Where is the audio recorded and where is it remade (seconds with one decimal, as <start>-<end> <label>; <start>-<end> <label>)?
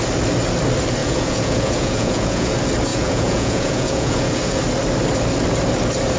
0.0-1.0 recorded; 1.0-2.5 remade; 2.5-2.9 recorded; 2.9-4.6 remade; 4.6-6.2 recorded